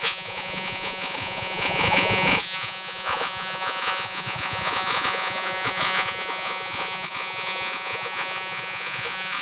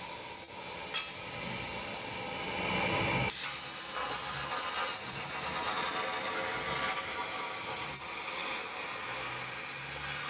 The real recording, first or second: second